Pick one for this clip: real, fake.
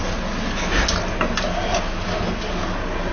real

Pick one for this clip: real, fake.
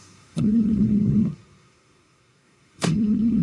fake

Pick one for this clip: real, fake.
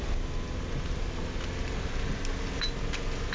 real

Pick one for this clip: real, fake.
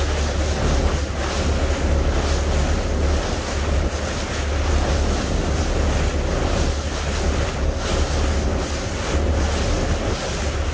real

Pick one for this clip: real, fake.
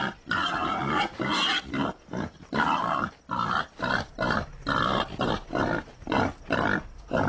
real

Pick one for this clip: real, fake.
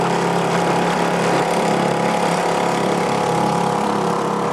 fake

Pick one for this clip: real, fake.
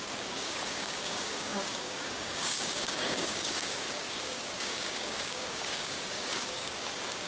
fake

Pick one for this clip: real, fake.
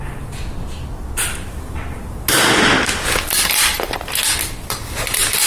real